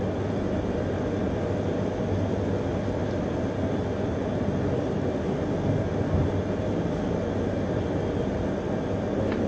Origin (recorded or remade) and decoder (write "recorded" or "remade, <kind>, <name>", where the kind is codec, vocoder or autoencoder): recorded